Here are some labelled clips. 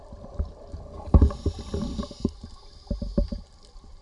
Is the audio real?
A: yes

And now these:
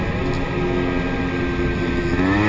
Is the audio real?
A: yes